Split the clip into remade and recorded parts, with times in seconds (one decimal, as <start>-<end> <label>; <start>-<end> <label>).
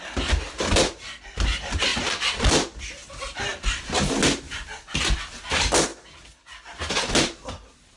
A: 0.0-8.0 recorded